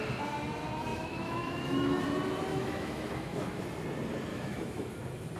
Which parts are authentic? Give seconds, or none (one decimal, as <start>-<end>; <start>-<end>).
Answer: 0.0-0.9; 2.0-2.5; 3.6-4.3; 4.9-5.4